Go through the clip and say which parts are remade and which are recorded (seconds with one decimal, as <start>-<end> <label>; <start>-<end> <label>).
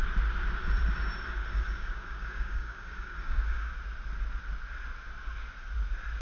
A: 0.0-1.5 recorded; 1.5-3.7 remade; 3.7-6.2 recorded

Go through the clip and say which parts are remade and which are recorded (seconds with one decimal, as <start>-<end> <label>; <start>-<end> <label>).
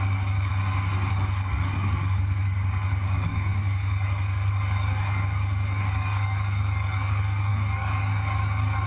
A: 0.0-0.5 remade; 0.5-1.1 recorded; 1.1-8.9 remade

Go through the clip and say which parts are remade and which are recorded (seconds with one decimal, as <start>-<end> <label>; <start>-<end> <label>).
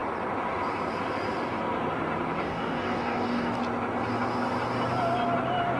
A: 0.0-2.4 recorded; 2.4-3.6 remade; 3.6-5.8 recorded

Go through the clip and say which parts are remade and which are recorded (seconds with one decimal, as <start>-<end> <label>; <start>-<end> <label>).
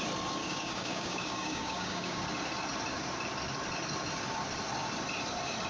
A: 0.0-0.4 recorded; 0.4-2.2 remade; 2.2-5.7 recorded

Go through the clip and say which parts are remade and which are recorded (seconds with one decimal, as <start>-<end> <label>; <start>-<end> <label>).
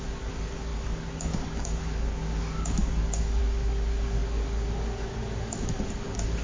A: 0.0-6.4 remade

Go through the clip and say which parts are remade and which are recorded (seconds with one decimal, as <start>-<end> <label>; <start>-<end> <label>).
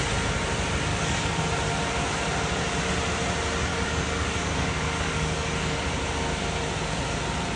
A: 0.0-0.9 recorded; 0.9-1.4 remade; 1.4-3.7 recorded; 3.7-5.8 remade; 5.8-7.6 recorded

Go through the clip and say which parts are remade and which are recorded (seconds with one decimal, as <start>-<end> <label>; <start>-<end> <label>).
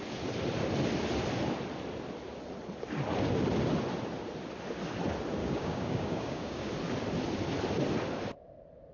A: 0.0-5.4 recorded; 5.4-6.7 remade; 6.7-8.9 recorded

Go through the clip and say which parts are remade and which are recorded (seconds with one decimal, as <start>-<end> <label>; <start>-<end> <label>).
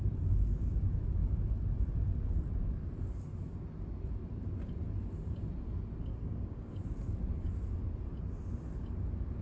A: 0.0-6.1 recorded; 6.1-6.7 remade; 6.7-9.4 recorded